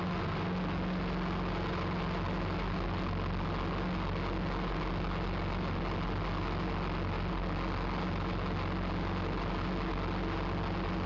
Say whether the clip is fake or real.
real